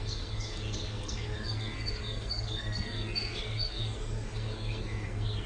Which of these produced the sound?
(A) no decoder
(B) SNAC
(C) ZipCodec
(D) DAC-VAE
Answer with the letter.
B